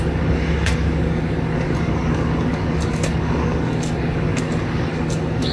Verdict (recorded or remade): remade